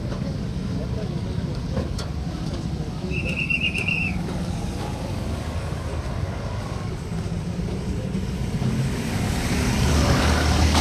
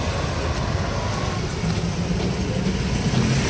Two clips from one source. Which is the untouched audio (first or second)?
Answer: second